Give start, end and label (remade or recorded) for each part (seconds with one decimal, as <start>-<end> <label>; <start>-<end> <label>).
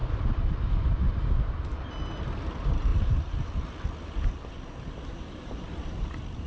0.0-1.3 remade; 1.3-2.9 recorded; 2.9-6.5 remade